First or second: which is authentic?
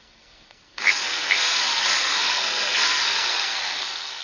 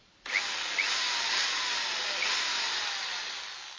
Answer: second